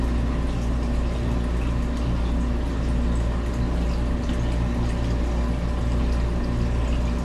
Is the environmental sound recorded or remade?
recorded